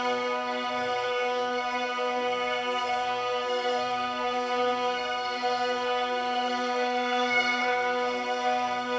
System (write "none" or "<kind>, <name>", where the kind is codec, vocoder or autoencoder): codec, SNAC